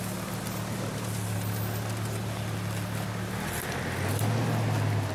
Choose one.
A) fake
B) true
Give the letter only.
B